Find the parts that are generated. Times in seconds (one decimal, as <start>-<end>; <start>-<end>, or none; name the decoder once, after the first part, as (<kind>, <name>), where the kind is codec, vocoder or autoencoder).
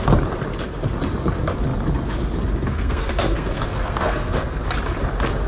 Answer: 2.7-4.6 (codec, SNAC)